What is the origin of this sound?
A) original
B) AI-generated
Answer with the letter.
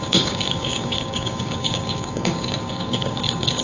B